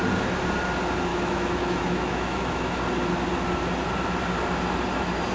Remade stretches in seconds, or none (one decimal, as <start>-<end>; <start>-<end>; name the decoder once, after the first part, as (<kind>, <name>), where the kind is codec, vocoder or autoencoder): 1.1-2.8 (autoencoder, DAC-VAE)